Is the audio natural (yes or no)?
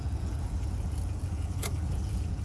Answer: no